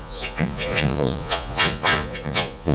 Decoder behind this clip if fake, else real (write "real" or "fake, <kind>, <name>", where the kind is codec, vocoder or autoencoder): fake, vocoder, Vocos